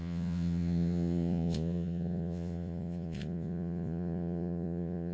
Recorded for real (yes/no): no